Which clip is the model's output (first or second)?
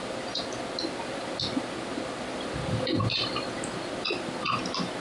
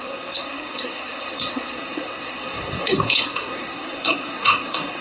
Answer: second